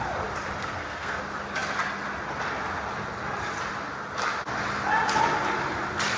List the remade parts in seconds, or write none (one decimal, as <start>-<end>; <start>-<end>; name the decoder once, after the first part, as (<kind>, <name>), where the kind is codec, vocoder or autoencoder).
0.6-1.2 (codec, SNAC)